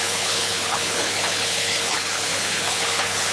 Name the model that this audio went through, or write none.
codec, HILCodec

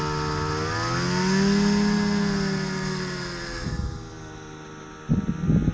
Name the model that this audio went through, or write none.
none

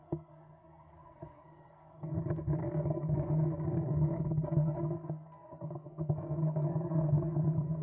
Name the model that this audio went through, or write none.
codec, SNAC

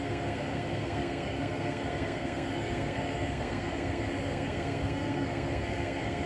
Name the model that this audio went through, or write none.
codec, SNAC